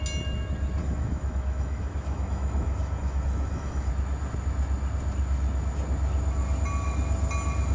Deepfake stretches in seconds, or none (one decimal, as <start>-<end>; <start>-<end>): 0.8-3.9